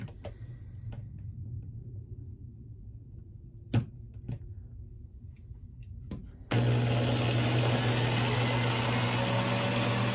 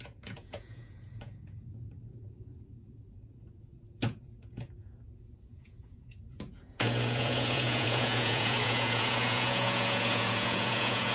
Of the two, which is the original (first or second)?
first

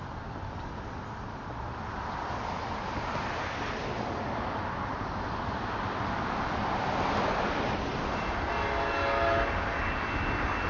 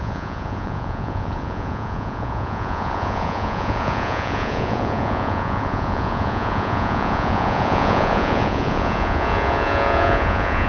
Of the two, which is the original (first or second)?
first